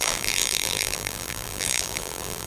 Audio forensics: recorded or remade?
remade